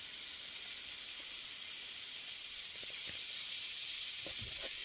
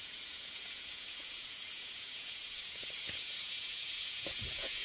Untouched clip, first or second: first